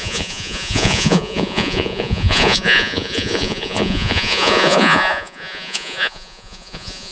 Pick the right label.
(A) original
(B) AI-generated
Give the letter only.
B